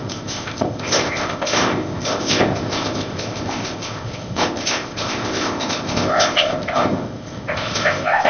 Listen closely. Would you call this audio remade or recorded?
remade